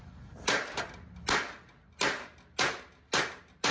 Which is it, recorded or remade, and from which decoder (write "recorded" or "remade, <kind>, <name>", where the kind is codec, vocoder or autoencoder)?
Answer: recorded